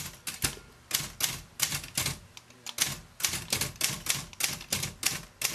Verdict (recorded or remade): recorded